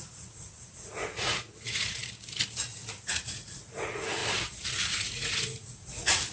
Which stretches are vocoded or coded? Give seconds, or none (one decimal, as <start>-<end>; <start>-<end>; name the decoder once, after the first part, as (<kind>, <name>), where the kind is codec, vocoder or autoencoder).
0.0-2.0 (vocoder, Vocos); 3.1-4.2; 4.8-6.3